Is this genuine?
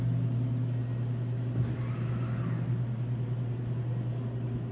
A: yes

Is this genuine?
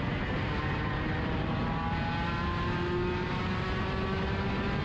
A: yes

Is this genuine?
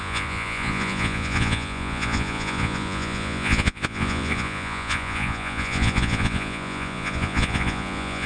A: no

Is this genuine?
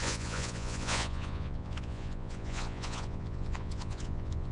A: no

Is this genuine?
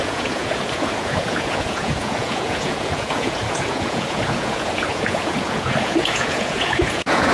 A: no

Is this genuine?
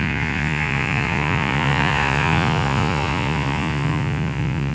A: no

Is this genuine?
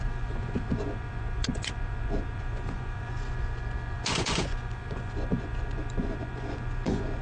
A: no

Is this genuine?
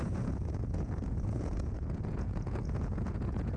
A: no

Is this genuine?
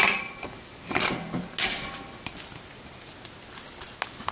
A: yes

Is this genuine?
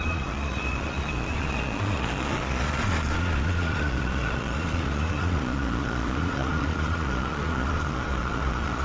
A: no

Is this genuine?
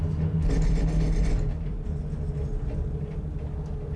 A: yes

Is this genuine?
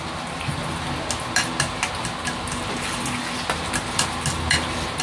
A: yes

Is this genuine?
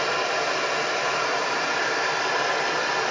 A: yes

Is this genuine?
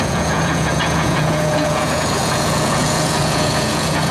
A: no